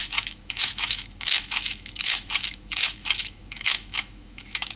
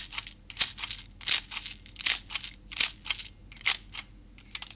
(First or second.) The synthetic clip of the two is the first